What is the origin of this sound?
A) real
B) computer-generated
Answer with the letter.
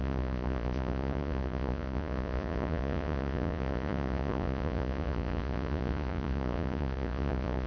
B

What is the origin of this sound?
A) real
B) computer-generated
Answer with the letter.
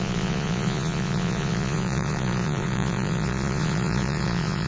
B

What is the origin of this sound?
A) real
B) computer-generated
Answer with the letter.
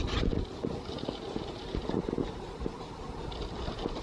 A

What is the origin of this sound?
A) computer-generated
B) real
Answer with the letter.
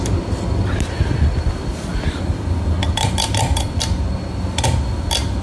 B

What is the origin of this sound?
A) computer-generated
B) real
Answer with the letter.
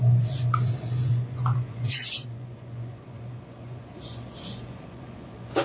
A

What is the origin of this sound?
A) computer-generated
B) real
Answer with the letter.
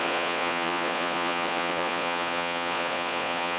A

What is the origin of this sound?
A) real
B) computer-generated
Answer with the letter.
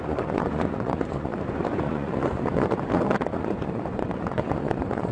B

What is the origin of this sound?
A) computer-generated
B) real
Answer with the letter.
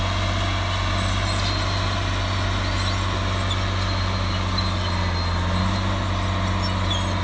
B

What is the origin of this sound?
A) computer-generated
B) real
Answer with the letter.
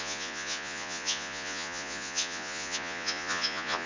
A